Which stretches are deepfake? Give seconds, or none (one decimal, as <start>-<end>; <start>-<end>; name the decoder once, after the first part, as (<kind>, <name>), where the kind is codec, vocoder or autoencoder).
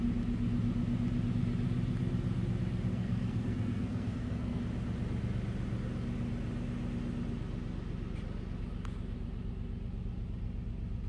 2.9-4.6 (codec, SNAC)